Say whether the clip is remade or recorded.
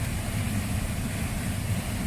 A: recorded